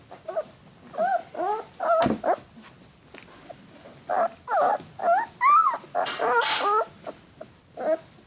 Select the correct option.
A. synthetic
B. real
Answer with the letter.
B